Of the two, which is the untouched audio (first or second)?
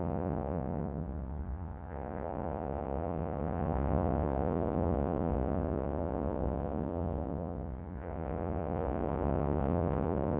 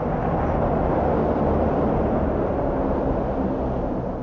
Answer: second